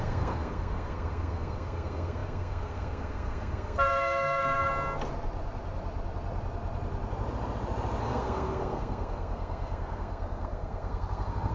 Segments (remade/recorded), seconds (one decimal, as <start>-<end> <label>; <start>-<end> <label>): 0.0-4.7 remade; 4.7-8.0 recorded; 8.0-11.5 remade